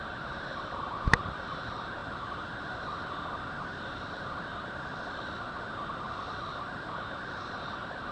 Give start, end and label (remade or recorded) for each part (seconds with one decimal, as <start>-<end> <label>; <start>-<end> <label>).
0.0-2.0 remade; 2.0-6.9 recorded; 6.9-8.1 remade